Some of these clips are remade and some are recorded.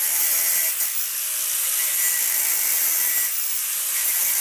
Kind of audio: recorded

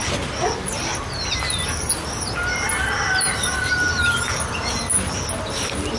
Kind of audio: recorded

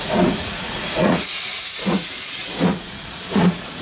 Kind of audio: remade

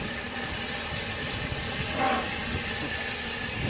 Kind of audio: recorded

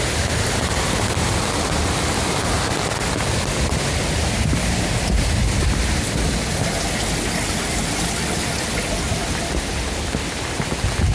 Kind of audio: recorded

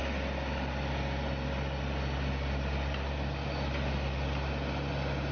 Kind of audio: recorded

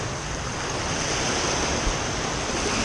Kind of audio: recorded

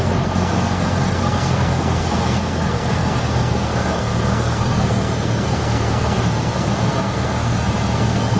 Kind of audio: remade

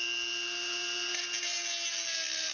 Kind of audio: recorded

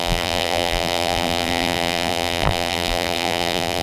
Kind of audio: remade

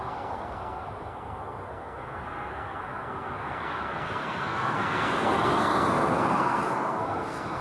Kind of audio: remade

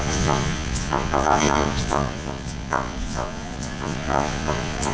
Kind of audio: remade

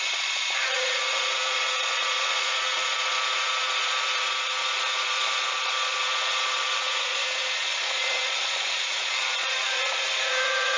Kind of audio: remade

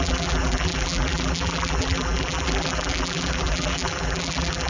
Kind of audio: remade